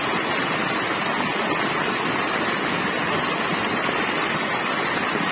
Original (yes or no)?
yes